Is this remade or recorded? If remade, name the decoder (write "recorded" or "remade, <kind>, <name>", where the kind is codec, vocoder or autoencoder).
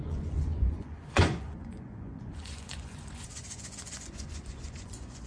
remade, vocoder, Vocos